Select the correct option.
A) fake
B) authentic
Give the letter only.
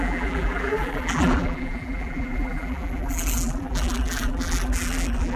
A